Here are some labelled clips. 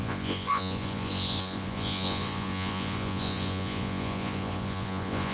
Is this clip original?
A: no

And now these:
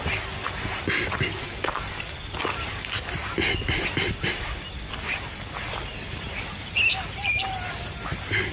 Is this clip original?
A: yes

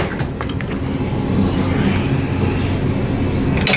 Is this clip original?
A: yes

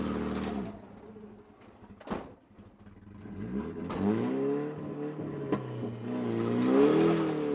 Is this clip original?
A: yes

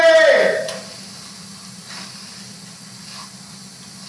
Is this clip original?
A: yes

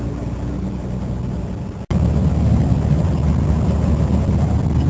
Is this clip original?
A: yes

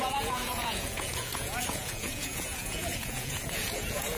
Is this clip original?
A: no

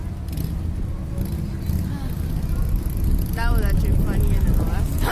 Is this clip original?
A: yes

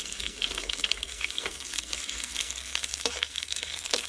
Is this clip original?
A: no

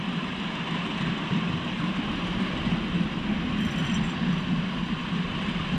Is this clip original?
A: yes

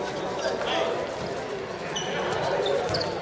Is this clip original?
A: yes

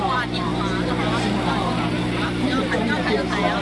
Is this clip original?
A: yes